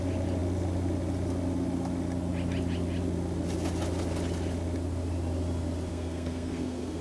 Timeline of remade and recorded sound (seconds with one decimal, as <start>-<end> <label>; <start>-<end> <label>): 0.0-5.9 recorded; 5.9-7.0 remade